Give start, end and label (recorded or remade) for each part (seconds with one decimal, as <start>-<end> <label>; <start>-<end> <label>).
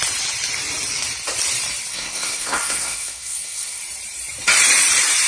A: 0.0-1.9 recorded; 1.9-3.8 remade; 3.8-5.3 recorded